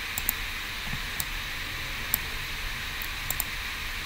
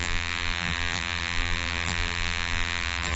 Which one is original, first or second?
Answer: first